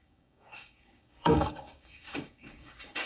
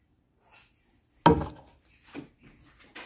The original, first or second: second